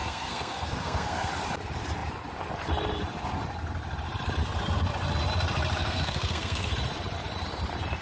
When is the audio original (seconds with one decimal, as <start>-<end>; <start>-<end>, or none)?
1.3-5.8; 6.7-8.0